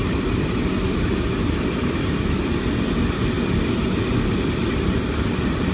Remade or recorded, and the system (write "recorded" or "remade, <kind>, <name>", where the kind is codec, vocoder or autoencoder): recorded